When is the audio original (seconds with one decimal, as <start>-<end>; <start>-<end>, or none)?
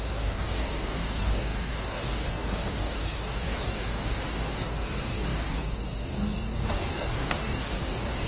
none